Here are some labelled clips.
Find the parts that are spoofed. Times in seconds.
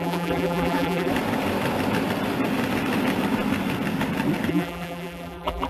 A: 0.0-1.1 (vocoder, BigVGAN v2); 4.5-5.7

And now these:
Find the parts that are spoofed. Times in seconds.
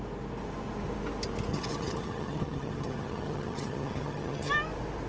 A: 1.5-4.5 (vocoder, HiFi-GAN)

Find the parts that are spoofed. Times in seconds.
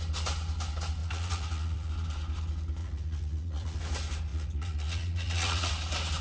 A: 1.0-1.9 (vocoder, Vocos); 2.8-3.8; 4.3-5.7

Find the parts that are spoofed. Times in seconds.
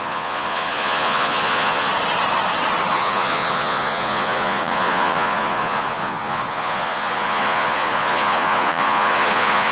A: 0.0-1.9 (vocoder, Vocos); 2.9-9.7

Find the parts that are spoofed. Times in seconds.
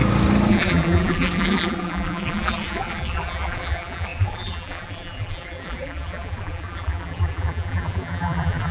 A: 0.5-8.7 (vocoder, BigVGAN v2)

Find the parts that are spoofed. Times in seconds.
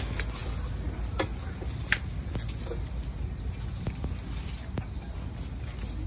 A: none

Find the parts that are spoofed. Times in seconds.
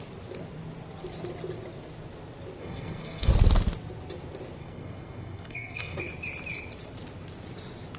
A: 2.6-3.3 (codec, SNAC); 4.6-6.0